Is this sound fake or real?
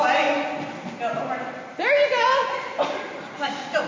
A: real